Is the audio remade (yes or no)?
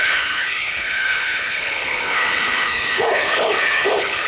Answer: yes